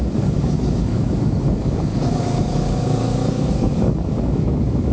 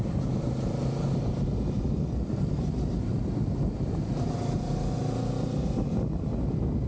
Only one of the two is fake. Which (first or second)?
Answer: first